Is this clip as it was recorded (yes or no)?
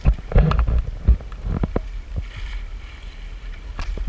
yes